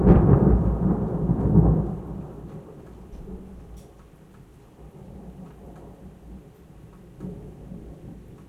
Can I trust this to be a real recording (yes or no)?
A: no